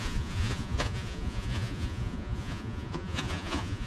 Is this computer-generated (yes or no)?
yes